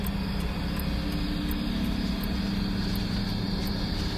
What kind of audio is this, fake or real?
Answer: real